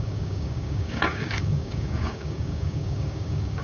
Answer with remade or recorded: remade